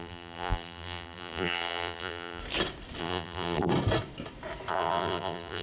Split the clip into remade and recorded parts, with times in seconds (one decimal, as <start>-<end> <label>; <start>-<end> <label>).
0.0-2.4 remade; 2.4-3.0 recorded; 3.0-3.7 remade; 3.7-4.7 recorded; 4.7-5.6 remade